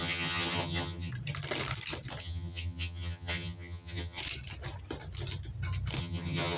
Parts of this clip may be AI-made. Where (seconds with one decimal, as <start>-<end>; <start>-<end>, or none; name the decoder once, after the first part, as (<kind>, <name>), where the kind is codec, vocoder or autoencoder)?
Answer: 0.0-1.1 (vocoder, HiFi-GAN); 2.2-4.2; 6.0-6.6

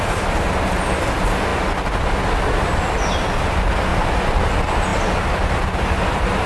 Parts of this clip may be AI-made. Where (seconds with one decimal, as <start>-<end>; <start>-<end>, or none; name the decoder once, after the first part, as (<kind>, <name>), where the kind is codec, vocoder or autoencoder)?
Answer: 3.9-4.5 (vocoder, BigVGAN v2)

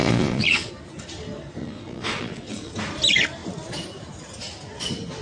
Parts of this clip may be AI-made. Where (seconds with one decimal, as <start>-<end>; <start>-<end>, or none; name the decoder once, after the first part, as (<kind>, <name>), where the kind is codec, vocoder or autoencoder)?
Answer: 0.0-0.7 (vocoder, Vocos); 1.6-2.7

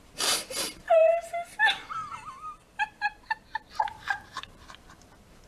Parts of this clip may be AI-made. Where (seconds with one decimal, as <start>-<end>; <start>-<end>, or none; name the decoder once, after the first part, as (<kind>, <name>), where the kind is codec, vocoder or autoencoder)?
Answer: 0.0-5.5 (vocoder, BigVGAN v2)

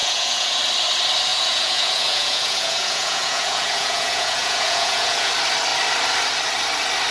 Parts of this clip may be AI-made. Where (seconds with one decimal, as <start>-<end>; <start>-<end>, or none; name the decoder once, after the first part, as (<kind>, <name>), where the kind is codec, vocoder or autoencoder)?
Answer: 0.0-0.6 (vocoder, Vocos); 1.3-5.3